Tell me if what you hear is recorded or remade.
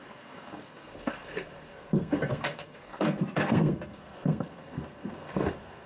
remade